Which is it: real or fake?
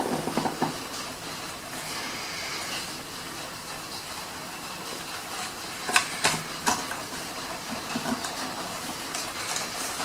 real